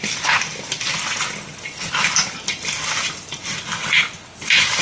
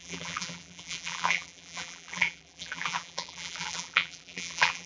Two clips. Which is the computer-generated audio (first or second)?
second